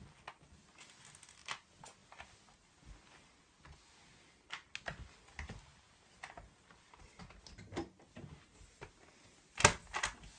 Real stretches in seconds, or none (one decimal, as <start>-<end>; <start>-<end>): 0.0-10.4

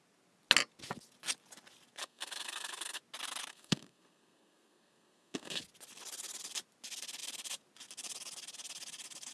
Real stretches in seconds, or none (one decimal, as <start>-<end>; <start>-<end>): 0.0-2.0; 3.0-3.5; 5.6-9.3

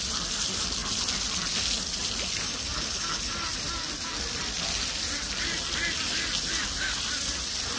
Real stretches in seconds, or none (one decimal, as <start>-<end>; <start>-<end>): 0.0-7.8

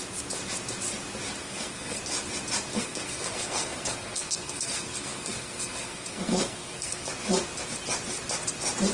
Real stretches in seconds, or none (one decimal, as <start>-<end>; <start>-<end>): 0.0-1.4; 2.0-2.7; 7.1-8.9

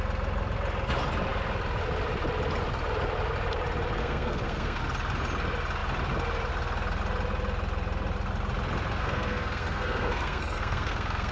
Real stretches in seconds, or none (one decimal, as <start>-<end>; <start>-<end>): 0.0-4.0; 4.8-9.0